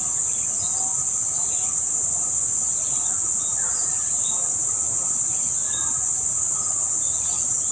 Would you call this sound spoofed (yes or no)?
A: no